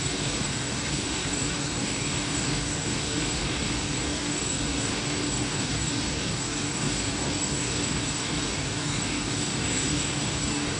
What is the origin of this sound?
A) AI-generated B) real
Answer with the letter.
A